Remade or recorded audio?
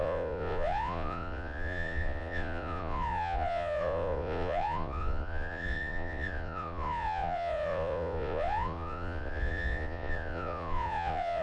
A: remade